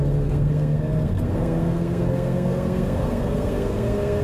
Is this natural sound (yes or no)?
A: no